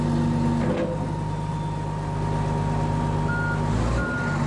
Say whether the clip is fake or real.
real